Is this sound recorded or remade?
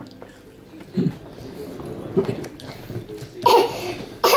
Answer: recorded